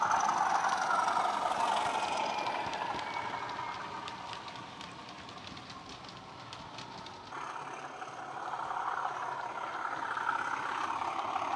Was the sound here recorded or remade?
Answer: recorded